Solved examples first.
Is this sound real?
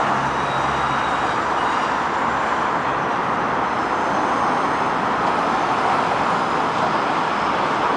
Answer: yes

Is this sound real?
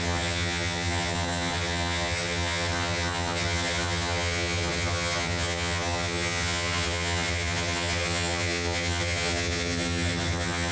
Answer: no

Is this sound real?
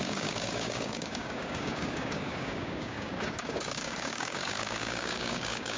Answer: no